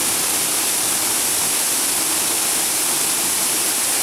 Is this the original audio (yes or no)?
yes